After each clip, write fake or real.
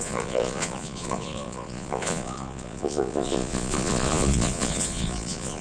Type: fake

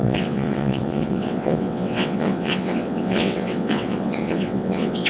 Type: fake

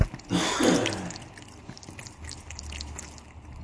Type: real